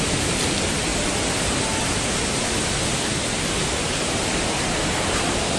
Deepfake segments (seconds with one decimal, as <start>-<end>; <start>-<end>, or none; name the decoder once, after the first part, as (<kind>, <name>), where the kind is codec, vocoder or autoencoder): none